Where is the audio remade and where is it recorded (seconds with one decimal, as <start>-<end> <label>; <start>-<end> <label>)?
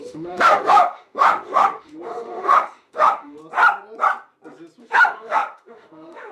0.0-3.4 remade; 3.4-4.8 recorded; 4.8-6.3 remade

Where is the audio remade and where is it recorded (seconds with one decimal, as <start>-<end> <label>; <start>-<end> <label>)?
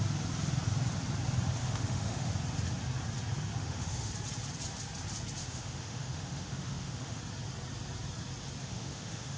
0.0-1.6 recorded; 1.6-2.3 remade; 2.3-3.6 recorded; 3.6-4.1 remade; 4.1-5.4 recorded; 5.4-7.2 remade; 7.2-8.6 recorded; 8.6-9.4 remade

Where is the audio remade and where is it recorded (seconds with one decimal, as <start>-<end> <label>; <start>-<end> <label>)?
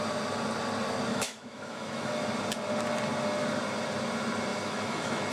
0.0-1.1 recorded; 1.1-2.1 remade; 2.1-4.5 recorded; 4.5-5.3 remade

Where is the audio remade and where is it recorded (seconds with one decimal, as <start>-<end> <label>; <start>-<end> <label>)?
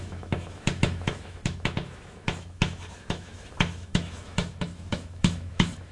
0.0-5.9 remade